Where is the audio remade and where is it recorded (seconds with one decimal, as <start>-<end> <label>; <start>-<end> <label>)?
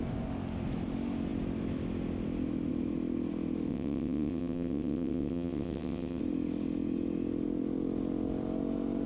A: 0.0-3.7 recorded; 3.7-6.2 remade; 6.2-9.1 recorded